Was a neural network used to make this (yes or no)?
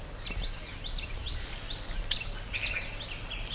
no